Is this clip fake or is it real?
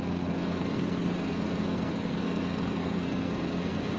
fake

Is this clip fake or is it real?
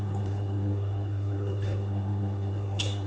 fake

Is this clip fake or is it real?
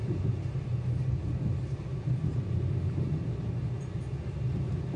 real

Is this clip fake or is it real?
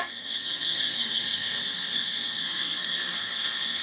fake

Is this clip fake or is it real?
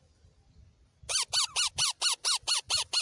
real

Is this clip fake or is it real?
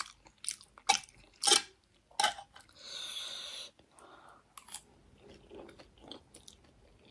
real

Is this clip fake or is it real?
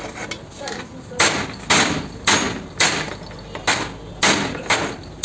real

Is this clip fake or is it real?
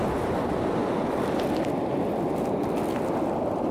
real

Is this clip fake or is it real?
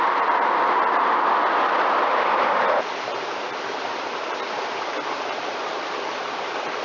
real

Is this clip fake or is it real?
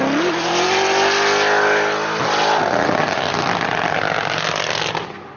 real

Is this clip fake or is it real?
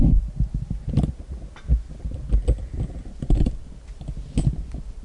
real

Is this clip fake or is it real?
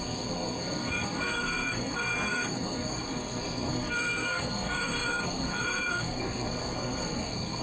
fake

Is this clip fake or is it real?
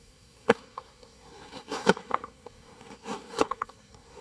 fake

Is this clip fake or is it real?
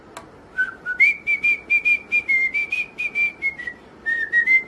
real